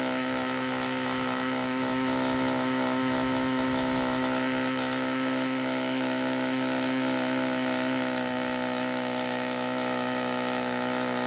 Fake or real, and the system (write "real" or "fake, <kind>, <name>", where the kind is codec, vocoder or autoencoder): fake, autoencoder, DAC-VAE